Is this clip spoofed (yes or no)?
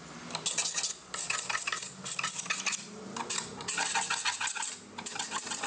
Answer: no